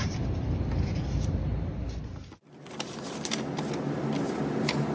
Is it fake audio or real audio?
real